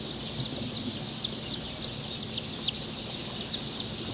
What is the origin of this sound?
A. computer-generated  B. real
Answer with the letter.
B